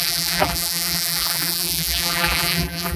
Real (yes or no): no